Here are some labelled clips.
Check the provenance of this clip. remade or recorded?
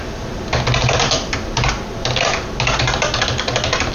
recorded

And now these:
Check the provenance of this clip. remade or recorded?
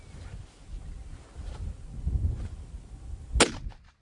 recorded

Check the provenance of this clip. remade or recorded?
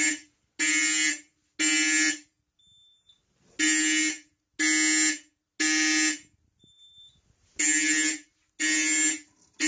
recorded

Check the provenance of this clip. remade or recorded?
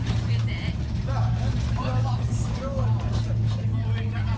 recorded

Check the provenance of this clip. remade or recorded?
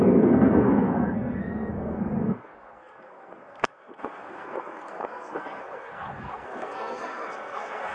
remade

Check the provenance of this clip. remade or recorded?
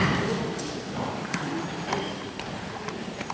recorded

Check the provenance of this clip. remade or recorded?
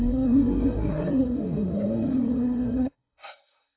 remade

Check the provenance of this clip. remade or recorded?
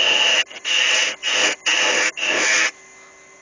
recorded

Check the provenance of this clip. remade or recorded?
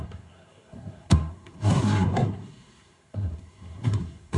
remade